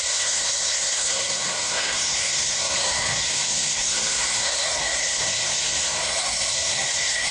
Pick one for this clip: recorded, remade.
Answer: remade